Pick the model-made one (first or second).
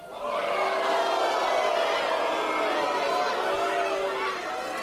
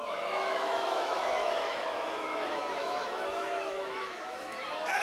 second